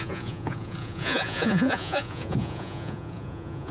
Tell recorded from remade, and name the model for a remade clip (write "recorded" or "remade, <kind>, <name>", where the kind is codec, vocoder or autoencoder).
remade, vocoder, Vocos